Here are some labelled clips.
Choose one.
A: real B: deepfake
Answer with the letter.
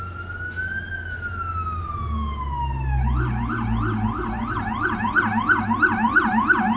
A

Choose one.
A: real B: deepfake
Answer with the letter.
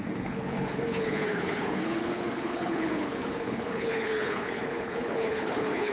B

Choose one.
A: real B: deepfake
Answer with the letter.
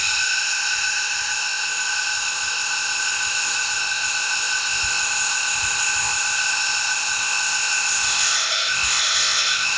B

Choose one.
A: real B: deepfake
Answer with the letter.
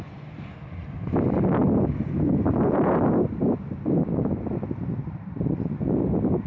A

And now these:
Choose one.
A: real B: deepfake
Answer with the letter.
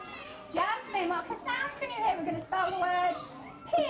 A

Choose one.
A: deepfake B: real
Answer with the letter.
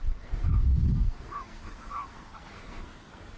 A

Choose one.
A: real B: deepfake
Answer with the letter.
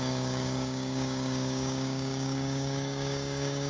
B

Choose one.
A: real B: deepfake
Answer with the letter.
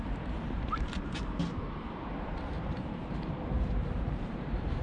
B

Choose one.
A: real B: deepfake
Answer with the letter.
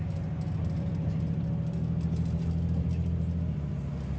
A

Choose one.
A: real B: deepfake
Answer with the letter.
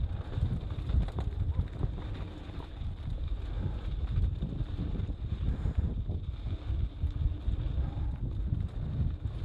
A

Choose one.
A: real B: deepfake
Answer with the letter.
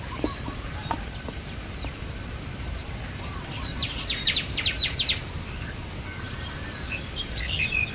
B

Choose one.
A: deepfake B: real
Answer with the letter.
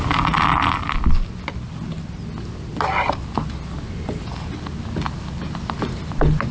B